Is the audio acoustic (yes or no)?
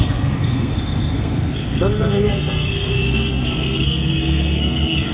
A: no